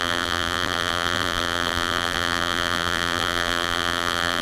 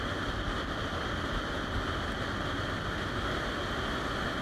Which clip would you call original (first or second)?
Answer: second